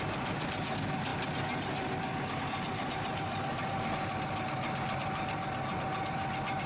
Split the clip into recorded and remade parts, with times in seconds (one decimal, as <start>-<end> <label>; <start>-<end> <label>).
0.0-6.7 recorded